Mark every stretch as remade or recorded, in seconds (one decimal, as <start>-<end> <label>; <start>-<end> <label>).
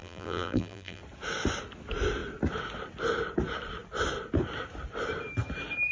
0.0-1.0 remade; 1.0-5.9 recorded